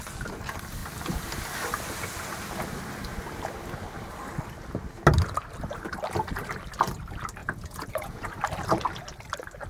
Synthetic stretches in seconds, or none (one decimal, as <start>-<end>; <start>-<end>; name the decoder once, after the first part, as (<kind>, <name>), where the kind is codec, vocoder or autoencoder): 7.4-8.3 (vocoder, Vocos)